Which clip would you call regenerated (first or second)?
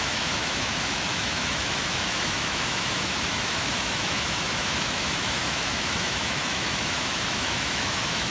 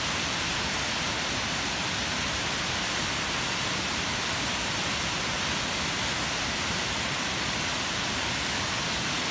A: first